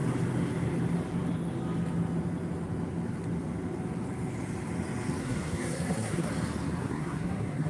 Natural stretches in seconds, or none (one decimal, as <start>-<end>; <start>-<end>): 0.0-5.2; 6.3-6.8